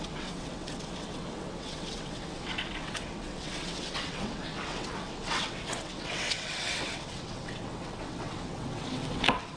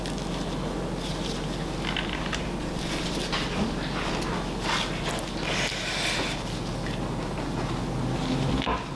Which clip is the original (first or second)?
second